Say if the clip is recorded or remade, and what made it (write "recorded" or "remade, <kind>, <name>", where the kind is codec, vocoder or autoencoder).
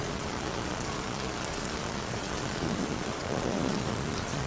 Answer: remade, vocoder, Vocos